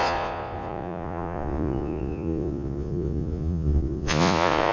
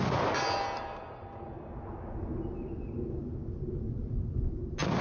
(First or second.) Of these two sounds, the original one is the second